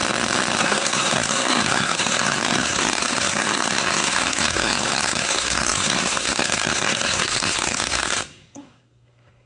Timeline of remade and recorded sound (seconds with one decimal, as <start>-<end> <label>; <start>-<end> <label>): 0.0-0.6 recorded; 0.6-9.5 remade